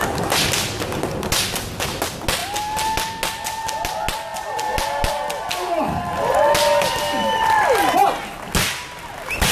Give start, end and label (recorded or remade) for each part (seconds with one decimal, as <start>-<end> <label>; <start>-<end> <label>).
0.0-9.5 recorded

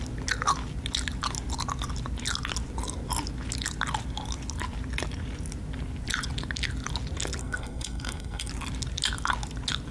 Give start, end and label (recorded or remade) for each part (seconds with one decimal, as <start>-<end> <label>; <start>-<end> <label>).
0.0-7.4 recorded; 7.4-8.5 remade; 8.5-9.9 recorded

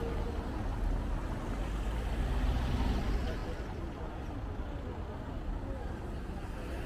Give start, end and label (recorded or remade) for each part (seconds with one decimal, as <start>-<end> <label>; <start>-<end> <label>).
0.0-6.9 recorded

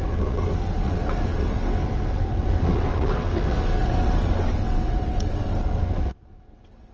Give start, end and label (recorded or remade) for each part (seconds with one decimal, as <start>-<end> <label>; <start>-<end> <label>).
0.0-6.9 remade

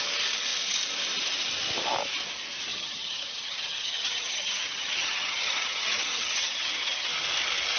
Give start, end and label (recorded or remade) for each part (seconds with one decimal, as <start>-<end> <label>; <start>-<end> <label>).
0.0-2.7 recorded; 2.7-7.1 remade; 7.1-7.8 recorded

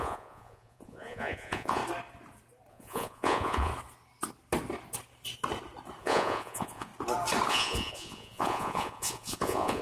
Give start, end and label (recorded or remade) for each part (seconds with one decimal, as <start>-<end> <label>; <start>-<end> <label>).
0.0-1.8 remade; 1.8-2.7 recorded; 2.7-3.7 remade; 3.7-6.0 recorded; 6.0-6.9 remade; 6.9-7.5 recorded; 7.5-9.8 remade